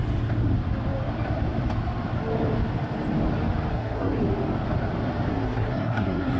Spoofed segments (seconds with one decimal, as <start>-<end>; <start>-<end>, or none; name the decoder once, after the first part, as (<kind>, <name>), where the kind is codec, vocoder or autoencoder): 3.7-4.2 (codec, SNAC); 5.3-6.4